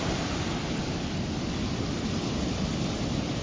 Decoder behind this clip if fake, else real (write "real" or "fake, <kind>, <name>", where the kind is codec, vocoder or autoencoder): real